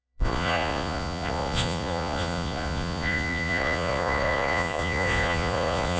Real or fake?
fake